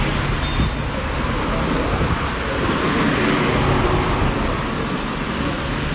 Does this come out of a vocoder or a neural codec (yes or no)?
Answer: no